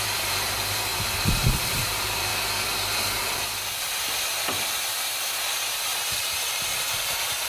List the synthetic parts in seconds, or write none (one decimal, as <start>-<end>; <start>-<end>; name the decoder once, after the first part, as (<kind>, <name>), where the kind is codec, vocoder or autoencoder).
0.0-2.3 (vocoder, BigVGAN v2); 3.4-5.9; 6.9-7.5

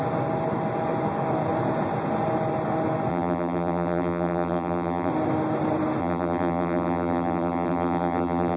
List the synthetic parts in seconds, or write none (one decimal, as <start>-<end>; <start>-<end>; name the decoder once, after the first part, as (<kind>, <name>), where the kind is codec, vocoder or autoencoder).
3.1-5.1 (vocoder, BigVGAN v2); 6.0-8.6

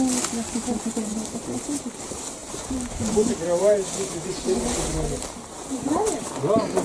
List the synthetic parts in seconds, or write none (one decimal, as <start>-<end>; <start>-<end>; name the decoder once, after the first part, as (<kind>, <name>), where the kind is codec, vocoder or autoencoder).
2.4-3.9 (vocoder, BigVGAN v2); 5.7-6.3